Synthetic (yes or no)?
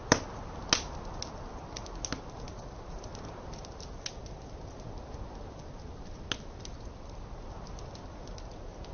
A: no